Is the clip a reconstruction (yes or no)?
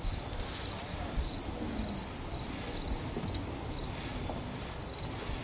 no